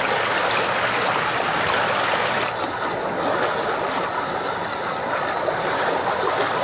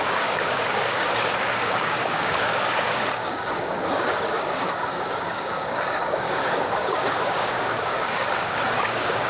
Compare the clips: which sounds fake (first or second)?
second